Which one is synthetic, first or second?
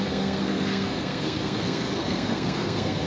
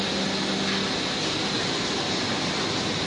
first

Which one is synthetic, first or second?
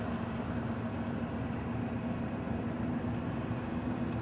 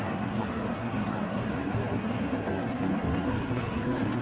second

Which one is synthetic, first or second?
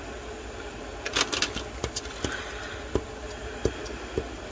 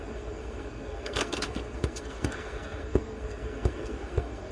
second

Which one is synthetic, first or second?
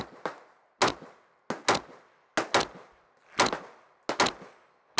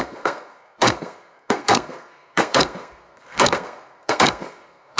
second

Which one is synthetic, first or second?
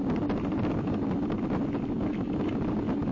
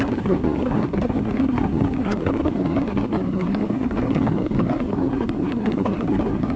second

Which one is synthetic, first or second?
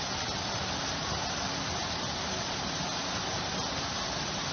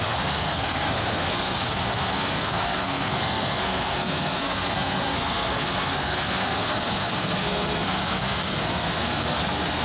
second